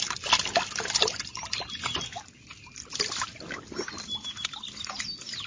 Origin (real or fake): real